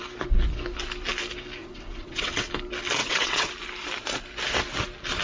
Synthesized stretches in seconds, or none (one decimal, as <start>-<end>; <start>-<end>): 1.6-2.5; 3.0-3.5